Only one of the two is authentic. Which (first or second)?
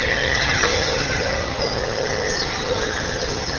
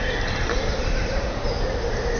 second